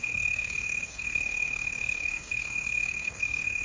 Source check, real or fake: fake